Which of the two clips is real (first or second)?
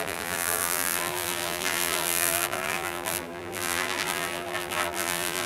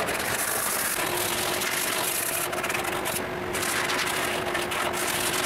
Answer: second